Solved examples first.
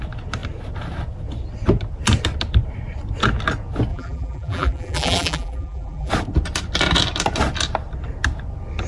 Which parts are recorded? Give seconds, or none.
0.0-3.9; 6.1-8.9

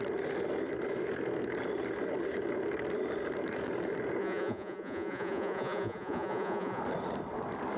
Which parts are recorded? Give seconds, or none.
0.0-4.2; 6.8-7.8

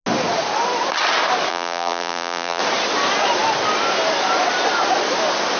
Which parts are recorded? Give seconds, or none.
0.0-1.5; 2.6-5.6